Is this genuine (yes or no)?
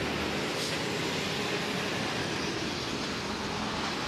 yes